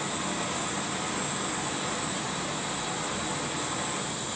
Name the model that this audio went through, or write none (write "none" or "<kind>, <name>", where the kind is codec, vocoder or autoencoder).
none